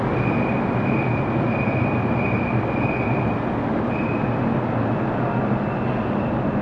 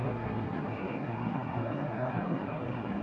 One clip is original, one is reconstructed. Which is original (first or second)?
first